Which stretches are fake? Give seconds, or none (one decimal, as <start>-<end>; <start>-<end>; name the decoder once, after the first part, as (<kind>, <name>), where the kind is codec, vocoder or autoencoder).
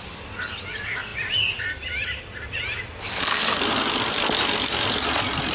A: none